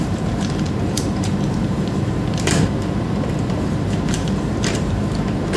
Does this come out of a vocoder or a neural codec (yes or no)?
yes